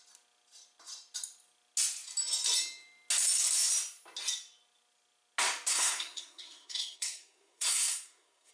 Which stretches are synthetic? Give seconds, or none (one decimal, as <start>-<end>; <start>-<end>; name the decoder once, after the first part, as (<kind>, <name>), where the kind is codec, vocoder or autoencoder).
5.7-8.5 (codec, SNAC)